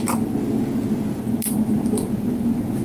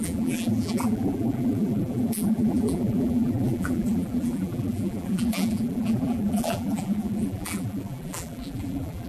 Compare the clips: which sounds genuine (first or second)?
first